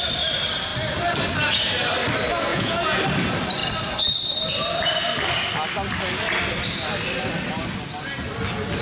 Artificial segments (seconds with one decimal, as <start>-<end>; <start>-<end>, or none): 2.5-3.0